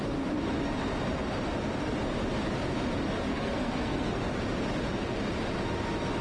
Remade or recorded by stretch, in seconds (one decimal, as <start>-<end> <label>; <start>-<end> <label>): 0.0-3.3 recorded; 3.3-4.4 remade; 4.4-6.2 recorded